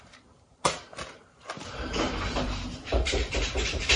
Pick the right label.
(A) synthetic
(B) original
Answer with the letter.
A